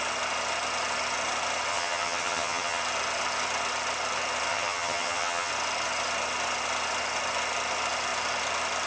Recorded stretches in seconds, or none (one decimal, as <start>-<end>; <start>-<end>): 0.0-1.7; 2.8-4.5; 5.5-8.9